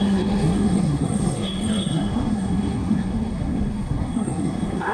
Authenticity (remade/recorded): remade